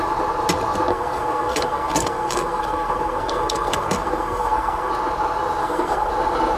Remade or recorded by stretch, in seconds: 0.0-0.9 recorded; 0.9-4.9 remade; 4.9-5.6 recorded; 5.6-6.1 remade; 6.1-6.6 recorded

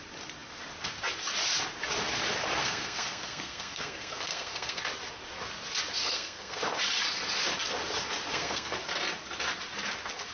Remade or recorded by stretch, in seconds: 0.0-2.6 recorded; 2.6-4.8 remade; 4.8-6.0 recorded; 6.0-6.6 remade; 6.6-8.3 recorded; 8.3-8.8 remade; 8.8-10.3 recorded

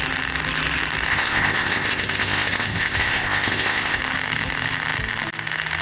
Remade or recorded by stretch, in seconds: 0.0-1.1 recorded; 1.1-4.0 remade; 4.0-5.8 recorded

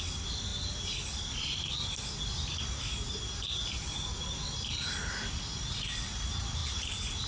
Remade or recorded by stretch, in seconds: 0.0-7.3 recorded

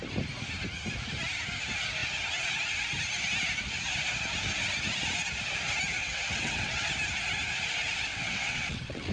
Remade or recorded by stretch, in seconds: 0.0-6.0 recorded; 6.0-6.9 remade; 6.9-8.1 recorded; 8.1-9.1 remade

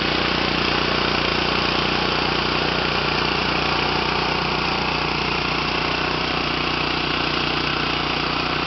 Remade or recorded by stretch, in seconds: 0.0-7.7 recorded; 7.7-8.7 remade

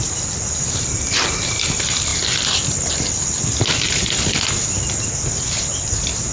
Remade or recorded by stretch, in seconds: 0.0-6.3 recorded